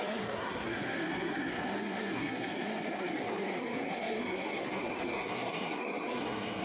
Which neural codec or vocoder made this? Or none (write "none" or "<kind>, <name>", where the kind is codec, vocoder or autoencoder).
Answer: codec, SNAC